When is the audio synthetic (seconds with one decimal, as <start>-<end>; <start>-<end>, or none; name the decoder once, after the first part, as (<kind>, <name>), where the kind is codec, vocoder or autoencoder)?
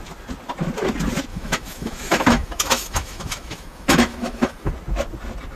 1.3-4.7 (autoencoder, DAC-VAE)